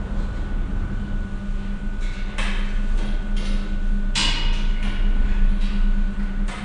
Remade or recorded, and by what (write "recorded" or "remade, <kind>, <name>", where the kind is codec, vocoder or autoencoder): recorded